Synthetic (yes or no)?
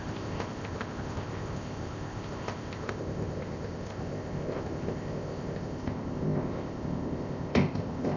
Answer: yes